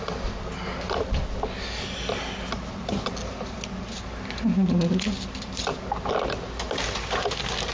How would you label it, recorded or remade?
recorded